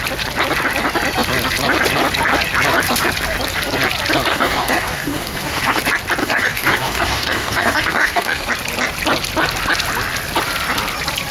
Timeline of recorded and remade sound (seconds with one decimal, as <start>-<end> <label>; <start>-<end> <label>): 0.0-4.3 recorded; 4.3-5.8 remade; 5.8-6.2 recorded; 6.2-8.5 remade; 8.5-11.3 recorded

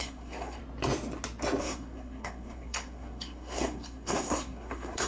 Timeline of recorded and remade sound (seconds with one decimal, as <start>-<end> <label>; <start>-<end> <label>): 0.0-0.6 remade; 0.6-1.6 recorded; 1.6-5.1 remade

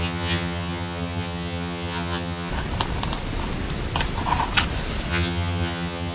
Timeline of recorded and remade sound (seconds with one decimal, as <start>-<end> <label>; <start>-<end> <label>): 0.0-2.5 remade; 2.5-5.1 recorded; 5.1-6.1 remade

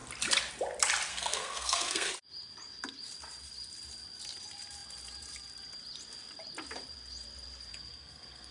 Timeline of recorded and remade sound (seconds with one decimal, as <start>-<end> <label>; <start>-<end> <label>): 0.0-1.1 recorded; 1.1-2.1 remade; 2.1-7.7 recorded; 7.7-8.5 remade

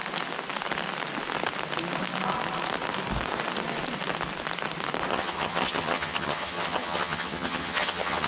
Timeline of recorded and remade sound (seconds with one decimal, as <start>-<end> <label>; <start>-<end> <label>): 0.0-5.1 recorded; 5.1-8.3 remade

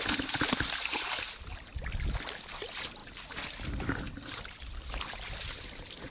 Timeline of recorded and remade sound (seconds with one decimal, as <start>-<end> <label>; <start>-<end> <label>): 0.0-6.1 recorded

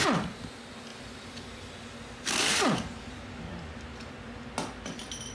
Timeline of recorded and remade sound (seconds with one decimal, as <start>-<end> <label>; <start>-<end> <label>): 0.0-0.9 recorded; 0.9-4.1 remade; 4.1-5.3 recorded